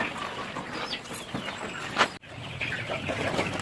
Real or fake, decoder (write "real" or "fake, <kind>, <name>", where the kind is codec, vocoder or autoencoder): real